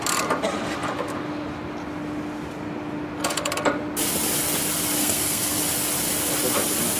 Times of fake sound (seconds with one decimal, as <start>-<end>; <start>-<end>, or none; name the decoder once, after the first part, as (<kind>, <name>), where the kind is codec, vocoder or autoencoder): 5.0-5.6 (codec, SNAC)